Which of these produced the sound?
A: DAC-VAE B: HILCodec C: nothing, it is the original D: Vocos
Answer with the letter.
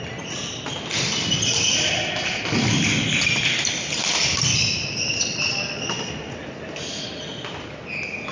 C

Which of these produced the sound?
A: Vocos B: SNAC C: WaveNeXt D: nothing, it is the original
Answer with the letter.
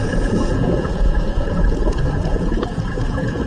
A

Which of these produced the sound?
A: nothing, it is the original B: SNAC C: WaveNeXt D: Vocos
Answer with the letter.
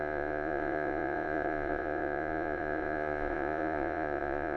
D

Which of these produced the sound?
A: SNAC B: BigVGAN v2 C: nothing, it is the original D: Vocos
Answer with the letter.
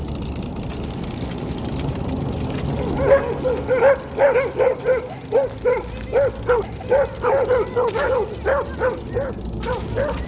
C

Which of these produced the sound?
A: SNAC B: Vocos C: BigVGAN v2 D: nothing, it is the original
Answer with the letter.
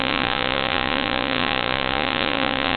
B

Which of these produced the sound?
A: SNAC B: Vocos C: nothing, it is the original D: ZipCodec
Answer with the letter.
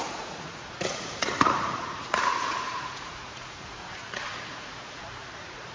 B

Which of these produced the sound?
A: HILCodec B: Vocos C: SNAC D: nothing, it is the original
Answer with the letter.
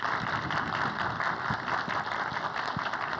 D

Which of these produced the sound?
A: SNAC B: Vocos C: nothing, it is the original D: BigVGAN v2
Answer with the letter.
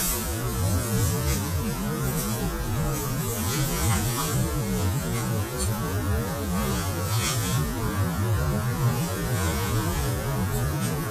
B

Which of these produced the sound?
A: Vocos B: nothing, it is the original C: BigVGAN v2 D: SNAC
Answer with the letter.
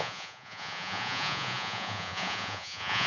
A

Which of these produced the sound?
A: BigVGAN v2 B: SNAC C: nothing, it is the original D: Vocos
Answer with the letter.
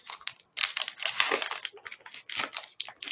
C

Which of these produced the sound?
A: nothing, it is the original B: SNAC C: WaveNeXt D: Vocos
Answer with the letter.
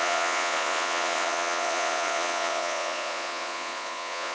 D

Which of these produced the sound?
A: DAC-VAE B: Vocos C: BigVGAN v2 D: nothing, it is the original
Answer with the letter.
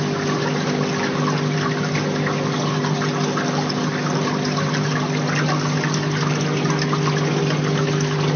D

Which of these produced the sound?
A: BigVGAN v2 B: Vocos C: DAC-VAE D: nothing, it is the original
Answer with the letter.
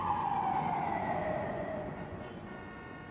B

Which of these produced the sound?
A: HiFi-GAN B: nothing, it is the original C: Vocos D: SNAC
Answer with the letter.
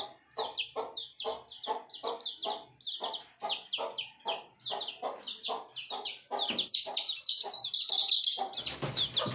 B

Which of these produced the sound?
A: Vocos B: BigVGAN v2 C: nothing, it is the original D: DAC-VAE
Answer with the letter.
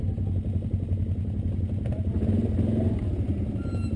C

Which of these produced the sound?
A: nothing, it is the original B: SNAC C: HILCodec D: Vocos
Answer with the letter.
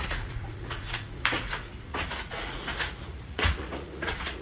D